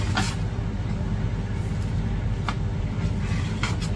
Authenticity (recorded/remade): recorded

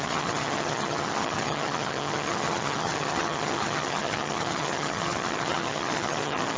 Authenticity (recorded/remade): remade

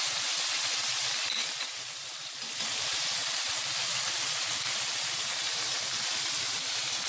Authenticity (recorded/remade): remade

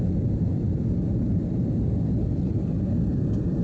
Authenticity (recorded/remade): recorded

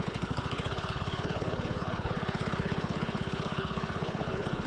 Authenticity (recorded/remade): remade